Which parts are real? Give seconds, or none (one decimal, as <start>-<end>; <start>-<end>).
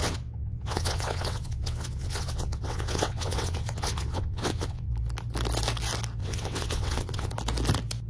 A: 4.9-6.2; 7.3-8.1